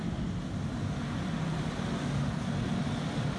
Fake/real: real